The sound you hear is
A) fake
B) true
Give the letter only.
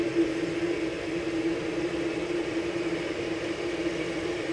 B